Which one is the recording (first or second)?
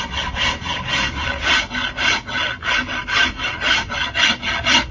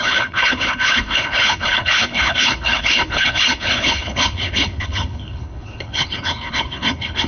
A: first